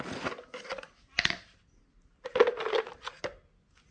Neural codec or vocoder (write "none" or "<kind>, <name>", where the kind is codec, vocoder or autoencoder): none